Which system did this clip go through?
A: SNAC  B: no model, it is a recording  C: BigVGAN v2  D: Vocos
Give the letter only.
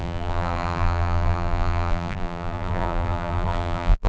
C